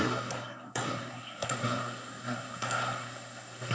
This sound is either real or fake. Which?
fake